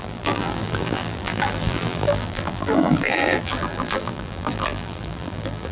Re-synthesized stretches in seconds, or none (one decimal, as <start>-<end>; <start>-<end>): 0.0-5.7